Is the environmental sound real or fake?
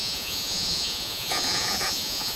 fake